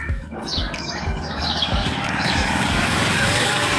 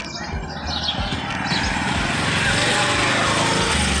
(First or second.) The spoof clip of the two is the first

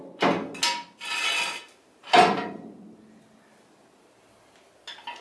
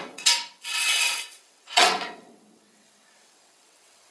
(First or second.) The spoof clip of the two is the second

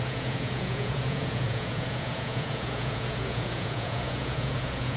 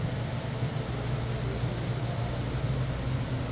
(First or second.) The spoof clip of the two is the first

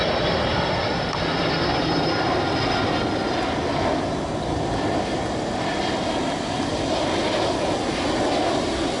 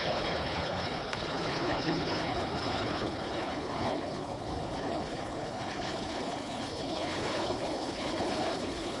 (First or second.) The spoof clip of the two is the second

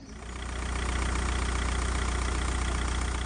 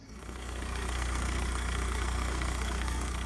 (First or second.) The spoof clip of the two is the second